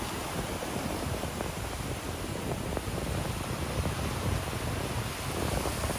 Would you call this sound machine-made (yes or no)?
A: no